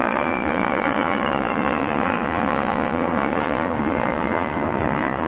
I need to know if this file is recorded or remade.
remade